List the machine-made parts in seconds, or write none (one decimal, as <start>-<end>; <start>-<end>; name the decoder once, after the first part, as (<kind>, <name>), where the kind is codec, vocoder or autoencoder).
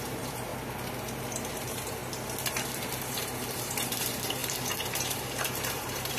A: 0.0-0.5 (vocoder, BigVGAN v2); 1.5-2.0; 2.5-6.2